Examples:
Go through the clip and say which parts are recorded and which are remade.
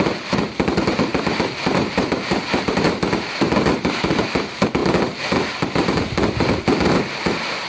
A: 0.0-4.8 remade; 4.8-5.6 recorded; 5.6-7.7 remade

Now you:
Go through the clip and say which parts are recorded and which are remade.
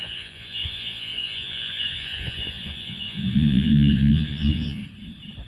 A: 0.0-4.8 remade; 4.8-5.5 recorded